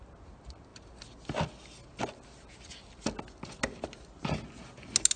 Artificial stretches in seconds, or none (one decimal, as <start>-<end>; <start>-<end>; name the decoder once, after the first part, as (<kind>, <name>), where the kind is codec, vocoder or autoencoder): none